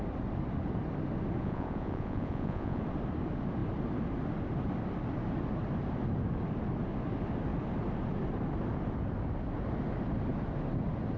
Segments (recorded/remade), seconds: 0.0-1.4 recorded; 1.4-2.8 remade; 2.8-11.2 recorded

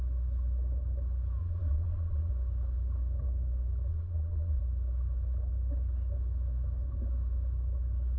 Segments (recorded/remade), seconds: 0.0-1.4 recorded; 1.4-2.3 remade; 2.3-3.9 recorded; 3.9-4.6 remade; 4.6-8.2 recorded

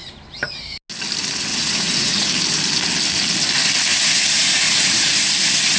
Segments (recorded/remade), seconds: 0.0-1.5 recorded; 1.5-2.3 remade; 2.3-3.9 recorded; 3.9-5.1 remade; 5.1-5.8 recorded

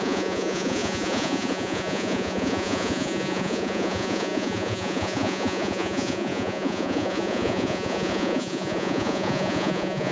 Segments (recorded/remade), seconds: 0.0-10.1 remade

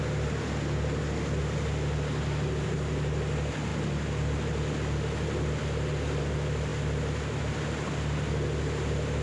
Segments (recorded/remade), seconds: 0.0-9.2 recorded